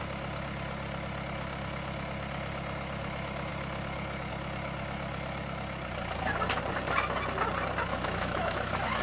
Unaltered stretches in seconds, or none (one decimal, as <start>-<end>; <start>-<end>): 0.0-7.9